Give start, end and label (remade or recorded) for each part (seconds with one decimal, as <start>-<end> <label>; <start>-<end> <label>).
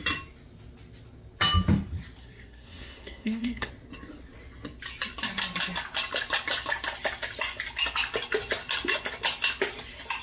0.0-2.2 recorded; 2.2-3.7 remade; 3.7-10.2 recorded